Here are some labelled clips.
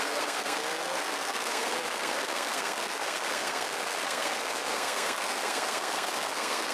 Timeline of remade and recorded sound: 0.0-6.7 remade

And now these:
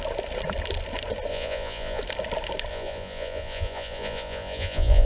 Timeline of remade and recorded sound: 0.0-1.3 recorded; 1.3-2.0 remade; 2.0-2.7 recorded; 2.7-5.1 remade

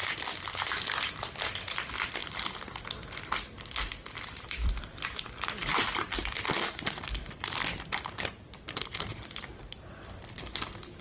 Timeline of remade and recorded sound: 0.0-2.2 recorded; 2.2-6.5 remade; 6.5-11.0 recorded

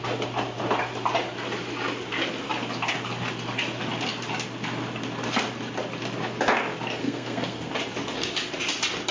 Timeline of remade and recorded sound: 0.0-7.0 recorded; 7.0-7.7 remade; 7.7-9.1 recorded

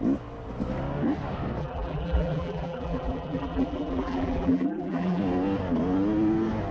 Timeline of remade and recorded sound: 0.0-1.6 recorded; 1.6-5.2 remade; 5.2-6.7 recorded

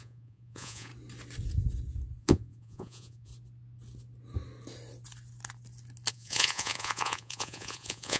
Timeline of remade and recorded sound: 0.0-0.9 remade; 0.9-2.2 recorded; 2.2-3.3 remade; 3.3-6.1 recorded; 6.1-8.2 remade

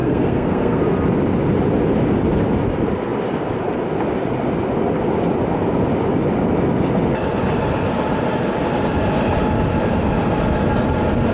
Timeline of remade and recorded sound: 0.0-0.8 remade; 0.8-11.3 recorded

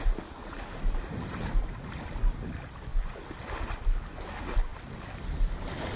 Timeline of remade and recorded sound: 0.0-6.0 recorded